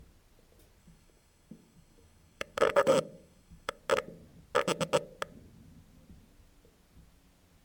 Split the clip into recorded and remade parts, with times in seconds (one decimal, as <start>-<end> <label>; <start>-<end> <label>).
0.0-0.8 recorded; 0.8-3.8 remade; 3.8-7.6 recorded